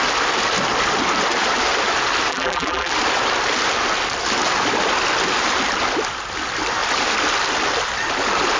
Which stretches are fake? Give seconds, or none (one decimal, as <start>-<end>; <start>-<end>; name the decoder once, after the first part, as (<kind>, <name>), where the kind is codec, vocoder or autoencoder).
2.3-2.9 (vocoder, BigVGAN v2)